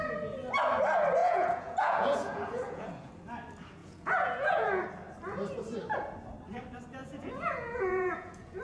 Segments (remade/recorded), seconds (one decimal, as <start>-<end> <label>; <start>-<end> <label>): 0.0-1.2 recorded; 1.2-3.1 remade; 3.1-3.8 recorded; 3.8-4.8 remade; 4.8-7.0 recorded; 7.0-8.6 remade